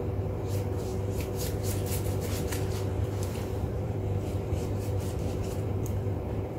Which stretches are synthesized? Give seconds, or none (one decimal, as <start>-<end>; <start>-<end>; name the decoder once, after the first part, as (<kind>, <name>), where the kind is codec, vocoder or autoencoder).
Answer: 0.0-0.9 (vocoder, BigVGAN v2); 3.0-6.6